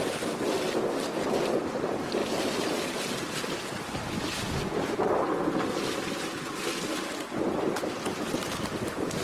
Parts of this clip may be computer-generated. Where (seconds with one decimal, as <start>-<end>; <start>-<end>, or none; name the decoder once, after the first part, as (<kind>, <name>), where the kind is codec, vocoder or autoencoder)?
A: none